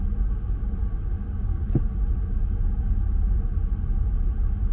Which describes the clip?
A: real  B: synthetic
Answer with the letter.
A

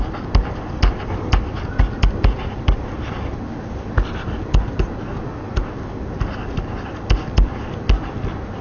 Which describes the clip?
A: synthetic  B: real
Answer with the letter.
B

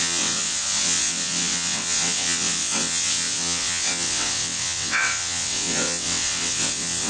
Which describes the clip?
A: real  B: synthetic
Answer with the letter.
B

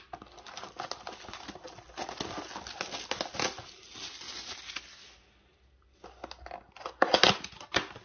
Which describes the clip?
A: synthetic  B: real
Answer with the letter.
B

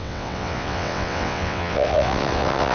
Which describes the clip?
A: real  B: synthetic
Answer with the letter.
B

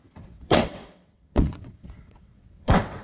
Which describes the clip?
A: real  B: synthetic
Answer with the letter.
B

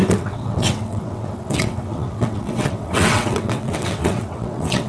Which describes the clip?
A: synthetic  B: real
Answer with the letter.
A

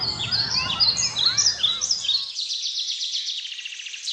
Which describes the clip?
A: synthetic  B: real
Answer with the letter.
B